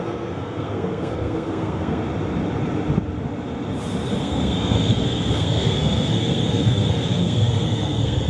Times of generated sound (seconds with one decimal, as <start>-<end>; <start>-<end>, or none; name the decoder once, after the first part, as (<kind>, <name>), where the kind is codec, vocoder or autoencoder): 0.0-2.0 (codec, SNAC); 4.2-8.3